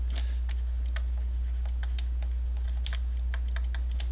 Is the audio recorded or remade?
recorded